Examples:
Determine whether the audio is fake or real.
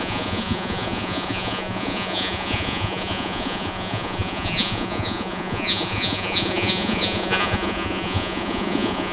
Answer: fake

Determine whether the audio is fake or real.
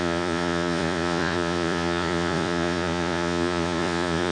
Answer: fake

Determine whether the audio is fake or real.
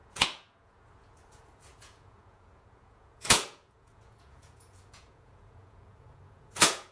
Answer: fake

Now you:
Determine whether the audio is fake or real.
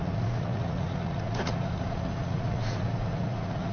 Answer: fake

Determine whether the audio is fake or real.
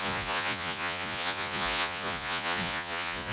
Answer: fake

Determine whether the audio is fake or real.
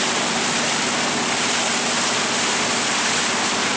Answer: real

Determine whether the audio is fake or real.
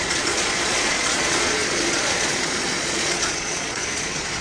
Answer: fake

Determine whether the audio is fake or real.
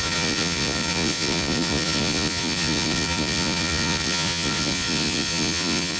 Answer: fake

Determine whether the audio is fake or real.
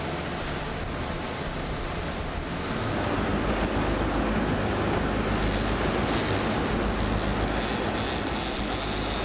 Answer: real